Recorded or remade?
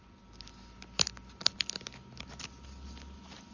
recorded